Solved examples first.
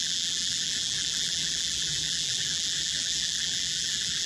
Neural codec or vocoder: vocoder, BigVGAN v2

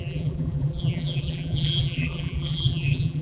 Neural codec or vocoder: vocoder, BigVGAN v2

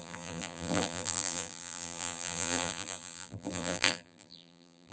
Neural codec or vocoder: vocoder, BigVGAN v2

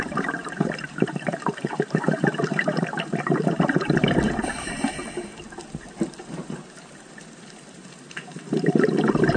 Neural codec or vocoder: vocoder, BigVGAN v2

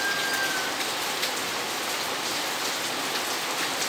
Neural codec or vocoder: none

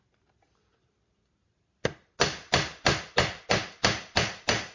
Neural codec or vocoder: none